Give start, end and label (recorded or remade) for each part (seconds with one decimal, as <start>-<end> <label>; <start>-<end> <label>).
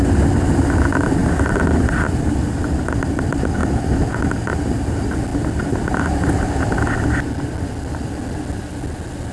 0.0-9.3 recorded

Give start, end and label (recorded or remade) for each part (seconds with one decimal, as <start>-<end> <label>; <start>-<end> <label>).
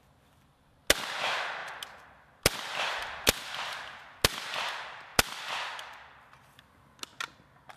0.0-7.8 recorded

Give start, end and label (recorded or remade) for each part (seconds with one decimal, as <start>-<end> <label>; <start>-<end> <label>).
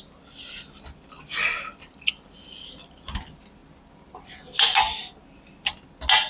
0.0-6.3 recorded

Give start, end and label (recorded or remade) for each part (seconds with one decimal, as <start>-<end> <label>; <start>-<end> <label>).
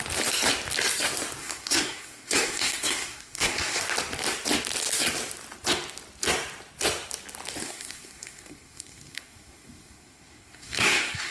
0.0-1.4 recorded; 1.4-3.8 remade; 3.8-7.6 recorded; 7.6-11.3 remade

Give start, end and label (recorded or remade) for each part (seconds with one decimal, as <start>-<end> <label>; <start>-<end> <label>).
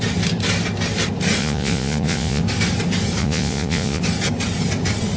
0.0-1.4 recorded; 1.4-2.4 remade; 2.4-3.2 recorded; 3.2-4.0 remade; 4.0-5.2 recorded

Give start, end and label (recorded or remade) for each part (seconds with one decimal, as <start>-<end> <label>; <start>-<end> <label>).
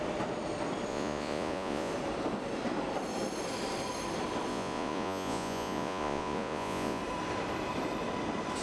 0.0-0.9 recorded; 0.9-1.9 remade; 1.9-4.5 recorded; 4.5-7.0 remade; 7.0-8.6 recorded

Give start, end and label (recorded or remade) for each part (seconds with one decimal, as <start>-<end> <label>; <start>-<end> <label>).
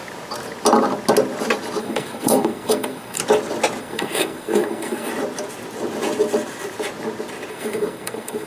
0.0-1.8 recorded; 1.8-3.2 remade; 3.2-3.8 recorded; 3.8-5.1 remade; 5.1-7.5 recorded; 7.5-8.5 remade